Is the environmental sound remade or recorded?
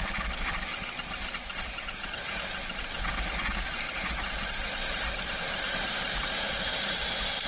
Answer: recorded